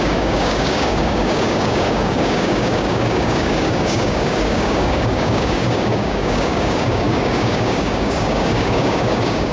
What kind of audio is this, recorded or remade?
remade